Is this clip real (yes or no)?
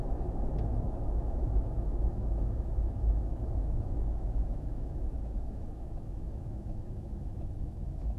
no